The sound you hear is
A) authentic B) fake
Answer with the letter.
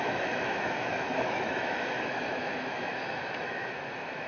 B